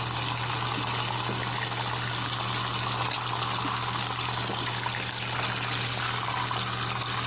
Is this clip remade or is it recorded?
recorded